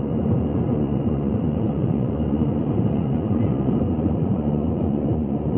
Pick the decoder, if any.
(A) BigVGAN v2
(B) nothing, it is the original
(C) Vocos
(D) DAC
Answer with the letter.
C